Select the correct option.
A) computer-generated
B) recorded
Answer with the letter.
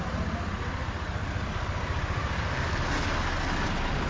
B